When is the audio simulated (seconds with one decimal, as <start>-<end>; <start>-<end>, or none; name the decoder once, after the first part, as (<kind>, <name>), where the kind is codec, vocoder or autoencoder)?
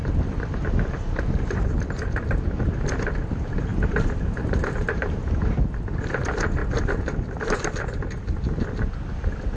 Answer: 0.0-1.7 (vocoder, BigVGAN v2); 3.7-5.3